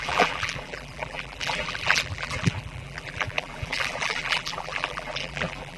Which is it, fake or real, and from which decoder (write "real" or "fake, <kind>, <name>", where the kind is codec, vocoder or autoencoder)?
fake, vocoder, BigVGAN v2